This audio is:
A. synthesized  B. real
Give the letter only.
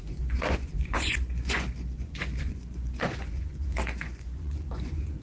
A